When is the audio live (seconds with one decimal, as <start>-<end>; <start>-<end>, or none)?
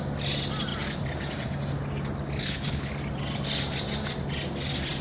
0.0-2.4; 2.9-5.0